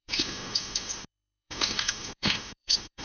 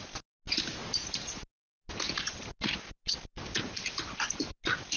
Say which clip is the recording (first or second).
second